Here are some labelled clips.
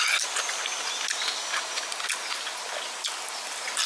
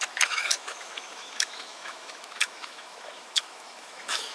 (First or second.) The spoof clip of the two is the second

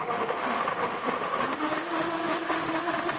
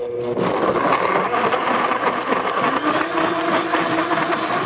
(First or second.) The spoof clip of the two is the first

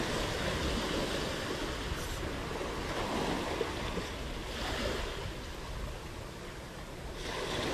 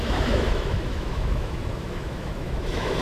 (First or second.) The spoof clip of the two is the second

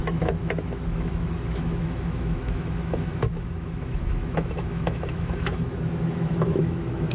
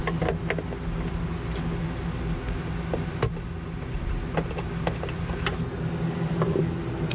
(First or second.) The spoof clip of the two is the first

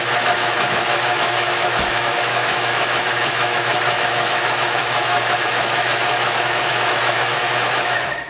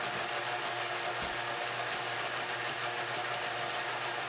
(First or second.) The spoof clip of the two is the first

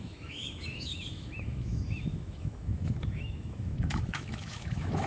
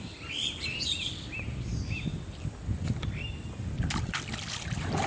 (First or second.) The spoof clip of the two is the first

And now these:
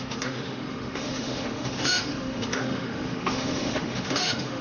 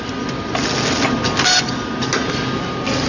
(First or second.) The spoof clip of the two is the first